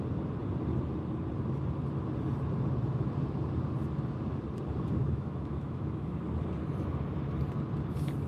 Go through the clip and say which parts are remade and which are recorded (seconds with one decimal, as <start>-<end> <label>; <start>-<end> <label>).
0.0-5.0 recorded; 5.0-6.2 remade; 6.2-8.3 recorded